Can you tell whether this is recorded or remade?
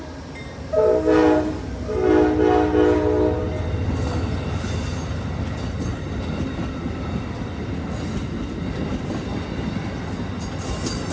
recorded